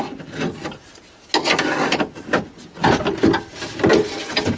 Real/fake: real